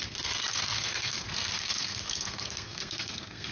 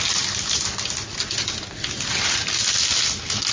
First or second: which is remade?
first